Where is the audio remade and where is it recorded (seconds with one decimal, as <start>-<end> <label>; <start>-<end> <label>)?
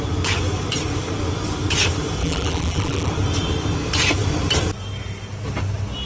0.0-2.2 recorded; 2.2-3.1 remade; 3.1-6.1 recorded